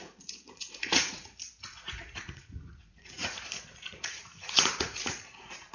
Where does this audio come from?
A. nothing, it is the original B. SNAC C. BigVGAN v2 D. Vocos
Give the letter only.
D